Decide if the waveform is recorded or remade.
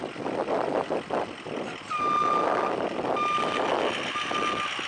recorded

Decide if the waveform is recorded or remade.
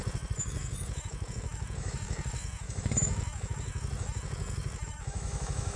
remade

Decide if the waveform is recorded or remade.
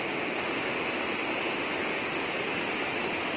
recorded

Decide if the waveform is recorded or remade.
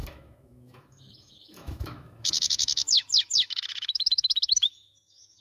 remade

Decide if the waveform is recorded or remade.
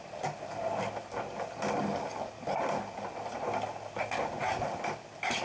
recorded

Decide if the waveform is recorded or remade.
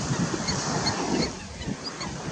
recorded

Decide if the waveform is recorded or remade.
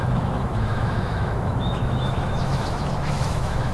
remade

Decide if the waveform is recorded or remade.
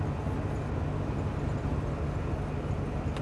recorded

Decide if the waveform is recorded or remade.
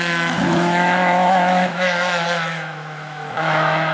remade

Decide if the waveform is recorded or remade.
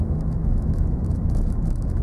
remade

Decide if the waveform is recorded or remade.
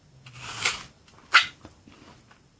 recorded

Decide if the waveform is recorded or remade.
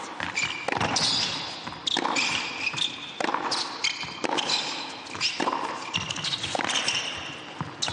recorded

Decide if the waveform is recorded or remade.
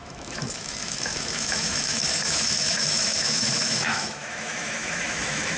remade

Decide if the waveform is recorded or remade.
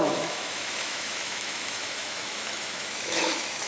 remade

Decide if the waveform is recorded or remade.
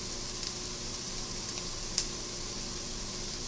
recorded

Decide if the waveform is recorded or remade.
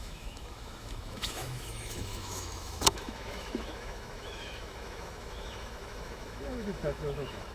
remade